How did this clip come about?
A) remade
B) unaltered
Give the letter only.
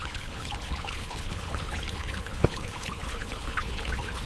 A